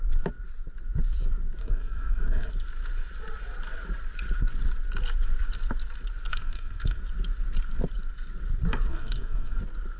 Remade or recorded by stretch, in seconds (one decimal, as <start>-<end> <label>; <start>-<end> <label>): 0.0-1.6 recorded; 1.6-2.5 remade; 2.5-6.3 recorded; 6.3-7.0 remade; 7.0-8.9 recorded; 8.9-9.6 remade; 9.6-10.0 recorded